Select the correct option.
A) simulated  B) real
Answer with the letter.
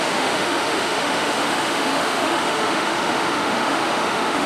A